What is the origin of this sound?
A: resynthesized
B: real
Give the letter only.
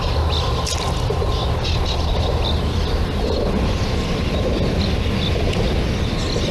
B